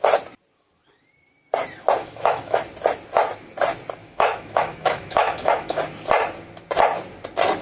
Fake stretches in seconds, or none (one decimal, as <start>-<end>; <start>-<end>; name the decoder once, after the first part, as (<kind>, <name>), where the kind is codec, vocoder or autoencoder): 2.0-2.6 (autoencoder, DAC-VAE); 4.0-5.8